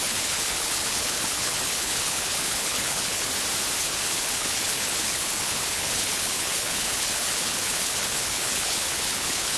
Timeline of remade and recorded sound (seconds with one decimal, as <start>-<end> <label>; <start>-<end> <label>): 0.0-3.3 remade; 3.3-3.8 recorded; 3.8-9.6 remade